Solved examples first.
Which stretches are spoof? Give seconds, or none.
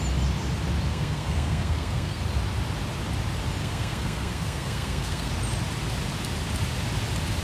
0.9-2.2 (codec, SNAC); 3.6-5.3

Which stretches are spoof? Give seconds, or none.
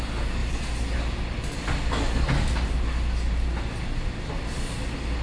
none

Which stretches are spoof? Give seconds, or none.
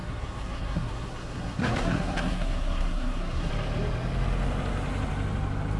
0.0-3.5 (codec, SNAC)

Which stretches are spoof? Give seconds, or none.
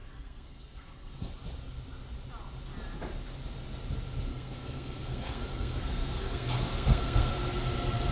0.0-1.3 (codec, SNAC); 4.3-7.3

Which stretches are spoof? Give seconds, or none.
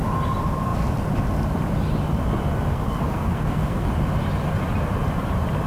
2.7-3.9 (codec, SNAC)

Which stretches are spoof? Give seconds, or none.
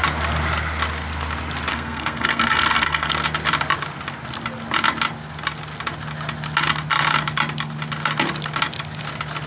1.7-3.1 (codec, SNAC)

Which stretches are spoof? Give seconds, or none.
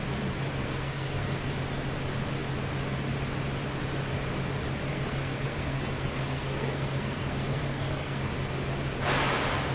0.6-1.5 (codec, SNAC); 4.9-8.2